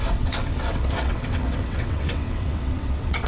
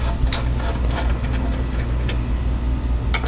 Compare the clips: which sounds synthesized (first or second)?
first